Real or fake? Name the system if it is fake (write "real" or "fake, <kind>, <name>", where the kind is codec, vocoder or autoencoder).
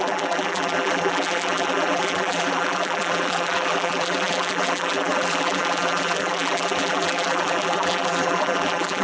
fake, vocoder, BigVGAN v2